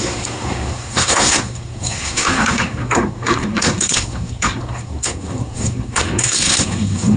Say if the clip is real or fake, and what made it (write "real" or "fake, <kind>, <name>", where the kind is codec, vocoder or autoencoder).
fake, codec, SNAC